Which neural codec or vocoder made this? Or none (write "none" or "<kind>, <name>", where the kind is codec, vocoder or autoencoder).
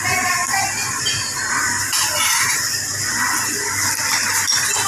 none